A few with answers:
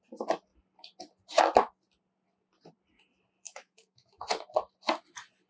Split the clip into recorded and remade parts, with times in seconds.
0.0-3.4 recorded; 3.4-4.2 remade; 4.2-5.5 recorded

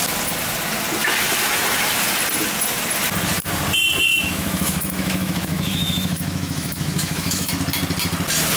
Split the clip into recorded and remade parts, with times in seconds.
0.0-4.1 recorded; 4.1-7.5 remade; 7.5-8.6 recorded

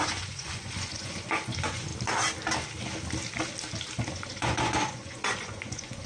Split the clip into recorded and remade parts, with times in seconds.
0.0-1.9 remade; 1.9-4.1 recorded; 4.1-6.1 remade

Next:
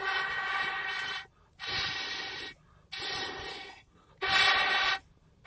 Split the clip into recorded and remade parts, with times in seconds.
0.0-3.5 recorded; 3.5-4.1 remade; 4.1-5.5 recorded